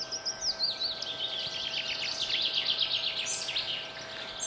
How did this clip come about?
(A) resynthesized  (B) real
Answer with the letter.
B